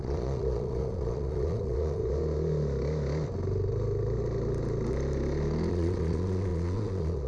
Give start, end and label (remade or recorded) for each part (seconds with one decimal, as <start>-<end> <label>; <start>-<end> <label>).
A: 0.0-2.0 remade; 2.0-5.7 recorded; 5.7-7.3 remade